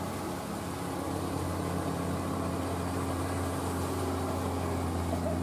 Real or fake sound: real